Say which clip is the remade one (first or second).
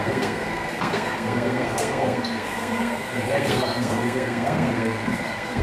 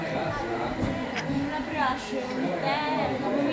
first